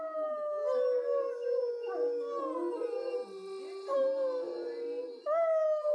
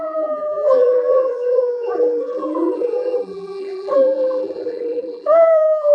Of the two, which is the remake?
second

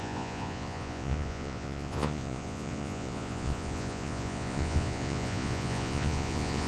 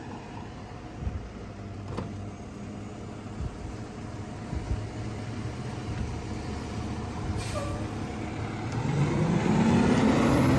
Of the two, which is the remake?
first